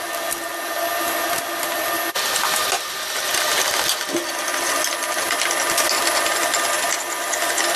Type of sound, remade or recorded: recorded